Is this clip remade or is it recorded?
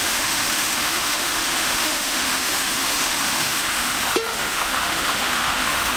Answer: remade